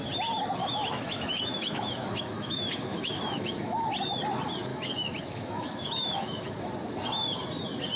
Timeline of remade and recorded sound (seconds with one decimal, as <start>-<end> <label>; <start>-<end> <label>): 0.0-0.6 recorded; 0.6-3.9 remade; 3.9-4.7 recorded; 4.7-6.7 remade; 6.7-8.0 recorded